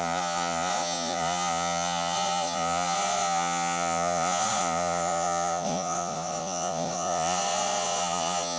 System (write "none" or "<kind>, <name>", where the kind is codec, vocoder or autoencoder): vocoder, Vocos